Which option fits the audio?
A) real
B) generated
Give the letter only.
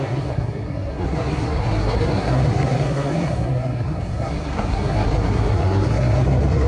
B